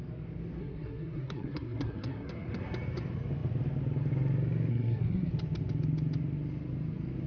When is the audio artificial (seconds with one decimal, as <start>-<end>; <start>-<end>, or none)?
0.6-2.6; 4.7-5.3